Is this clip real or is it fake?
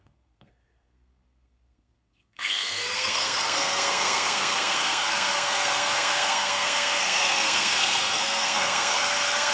fake